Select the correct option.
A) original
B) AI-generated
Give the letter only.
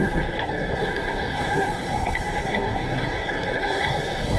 B